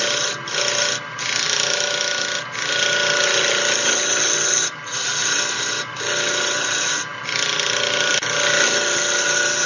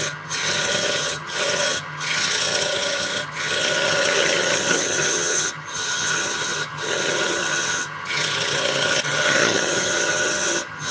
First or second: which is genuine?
first